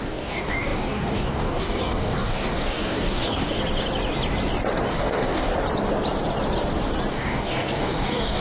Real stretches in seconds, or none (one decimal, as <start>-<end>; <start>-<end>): 3.6-4.9; 5.5-7.1